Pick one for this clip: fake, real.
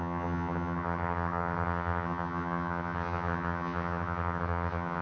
fake